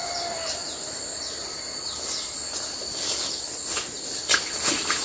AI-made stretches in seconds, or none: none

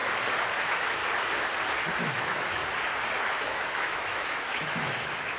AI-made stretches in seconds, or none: 0.6-1.0 (autoencoder, DAC-VAE); 2.0-2.6; 3.3-5.4

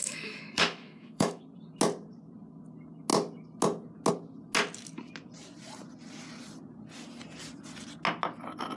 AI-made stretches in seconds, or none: 0.0-1.4 (autoencoder, DAC-VAE)